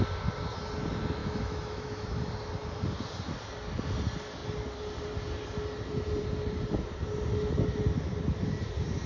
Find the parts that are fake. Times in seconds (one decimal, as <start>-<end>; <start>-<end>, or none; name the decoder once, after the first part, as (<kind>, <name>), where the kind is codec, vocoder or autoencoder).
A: 1.2-2.3 (autoencoder, DAC-VAE)

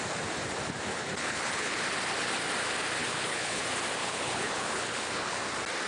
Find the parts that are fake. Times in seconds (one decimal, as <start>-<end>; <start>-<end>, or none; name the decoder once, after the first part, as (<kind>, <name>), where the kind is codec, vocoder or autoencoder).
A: 0.9-1.8 (codec, HILCodec); 3.0-3.6; 4.0-5.4